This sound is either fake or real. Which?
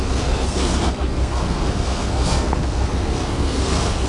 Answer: fake